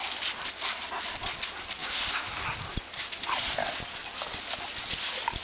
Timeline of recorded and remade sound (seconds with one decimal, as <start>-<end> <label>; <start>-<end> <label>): 0.0-5.4 recorded